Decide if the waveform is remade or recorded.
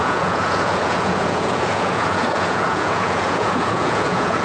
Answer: remade